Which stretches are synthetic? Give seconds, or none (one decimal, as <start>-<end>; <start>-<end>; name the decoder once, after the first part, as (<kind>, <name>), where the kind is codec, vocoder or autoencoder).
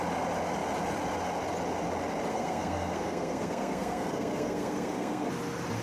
2.3-5.3 (codec, SNAC)